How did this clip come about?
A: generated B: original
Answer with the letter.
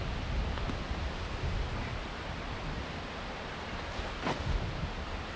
B